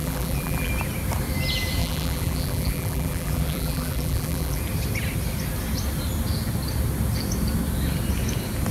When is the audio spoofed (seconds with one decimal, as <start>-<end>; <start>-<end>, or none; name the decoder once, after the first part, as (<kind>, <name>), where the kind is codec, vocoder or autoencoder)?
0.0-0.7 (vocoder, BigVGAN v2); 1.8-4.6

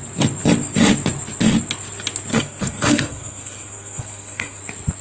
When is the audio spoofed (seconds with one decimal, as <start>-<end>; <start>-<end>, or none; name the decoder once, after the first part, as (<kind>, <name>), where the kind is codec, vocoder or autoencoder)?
2.3-4.6 (codec, SNAC)

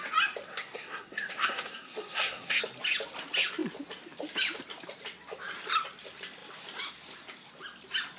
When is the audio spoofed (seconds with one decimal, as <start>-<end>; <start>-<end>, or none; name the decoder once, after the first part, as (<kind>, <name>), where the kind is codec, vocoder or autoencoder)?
0.5-2.6 (codec, SNAC)